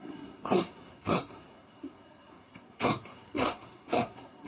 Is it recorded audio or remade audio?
remade